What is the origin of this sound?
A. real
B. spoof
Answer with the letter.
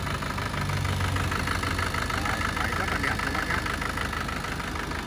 A